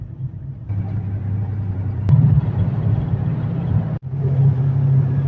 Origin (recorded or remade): remade